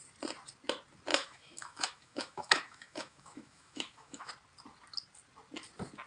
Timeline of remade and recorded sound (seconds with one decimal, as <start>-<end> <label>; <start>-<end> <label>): 0.0-1.1 recorded; 1.1-4.3 remade; 4.3-6.1 recorded

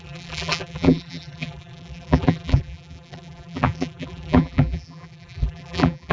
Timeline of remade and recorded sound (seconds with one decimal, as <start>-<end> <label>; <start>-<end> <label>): 0.0-6.1 remade